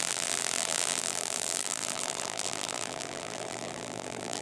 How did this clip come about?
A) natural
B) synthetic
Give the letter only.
B